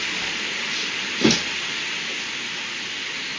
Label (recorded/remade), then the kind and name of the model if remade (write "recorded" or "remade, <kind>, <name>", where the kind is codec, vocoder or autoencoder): recorded